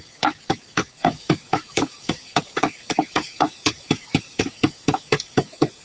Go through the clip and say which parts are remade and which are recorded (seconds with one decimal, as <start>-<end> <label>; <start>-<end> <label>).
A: 0.0-5.8 remade